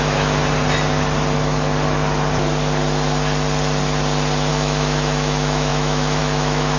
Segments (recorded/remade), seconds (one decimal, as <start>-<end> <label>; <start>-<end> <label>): 0.0-0.4 remade; 0.4-4.5 recorded; 4.5-6.8 remade